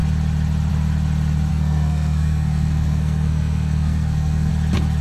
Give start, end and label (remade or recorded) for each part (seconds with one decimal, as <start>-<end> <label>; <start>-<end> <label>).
0.0-1.5 recorded; 1.5-4.5 remade; 4.5-5.0 recorded